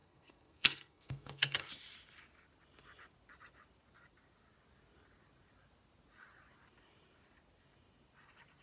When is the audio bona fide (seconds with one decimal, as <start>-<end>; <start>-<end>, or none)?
1.7-8.6